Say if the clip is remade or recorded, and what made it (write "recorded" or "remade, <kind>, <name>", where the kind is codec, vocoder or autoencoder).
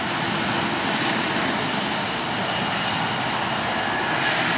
recorded